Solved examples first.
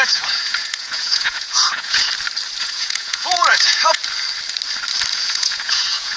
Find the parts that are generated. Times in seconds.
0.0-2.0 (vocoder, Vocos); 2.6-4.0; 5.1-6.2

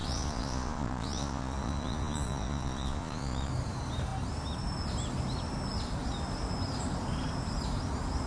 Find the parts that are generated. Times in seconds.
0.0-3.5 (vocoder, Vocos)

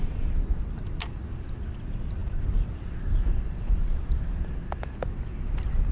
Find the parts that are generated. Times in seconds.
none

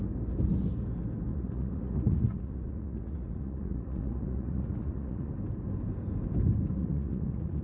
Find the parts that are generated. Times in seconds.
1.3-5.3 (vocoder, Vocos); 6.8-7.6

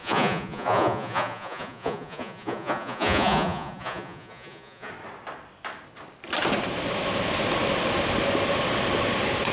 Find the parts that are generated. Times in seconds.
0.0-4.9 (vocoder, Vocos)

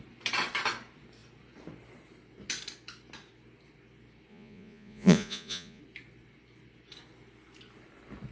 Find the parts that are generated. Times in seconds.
4.3-5.8 (vocoder, Vocos)